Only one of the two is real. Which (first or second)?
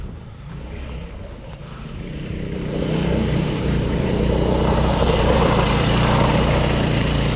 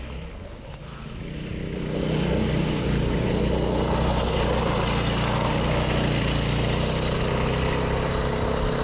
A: second